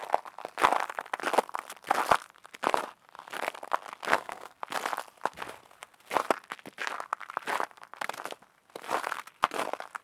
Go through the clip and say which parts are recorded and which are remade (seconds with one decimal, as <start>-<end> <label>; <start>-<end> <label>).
0.0-4.1 recorded; 4.1-4.6 remade; 4.6-10.0 recorded